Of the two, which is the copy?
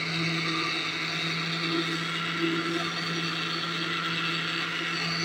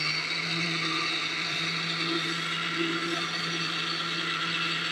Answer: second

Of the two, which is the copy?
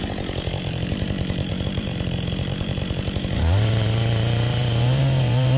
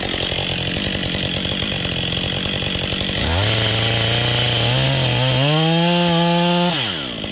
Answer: first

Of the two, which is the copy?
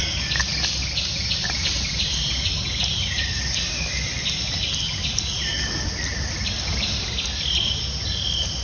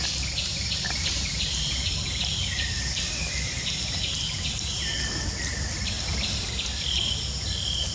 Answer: second